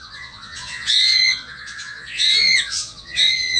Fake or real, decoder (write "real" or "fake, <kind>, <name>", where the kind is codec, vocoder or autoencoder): fake, vocoder, Vocos